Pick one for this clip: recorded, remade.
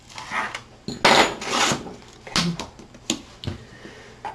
recorded